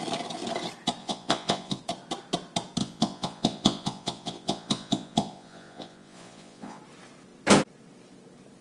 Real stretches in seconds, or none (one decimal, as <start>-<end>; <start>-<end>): 0.0-1.0; 1.8-2.8; 6.8-8.6